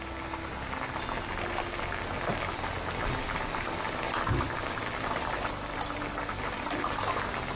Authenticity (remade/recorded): recorded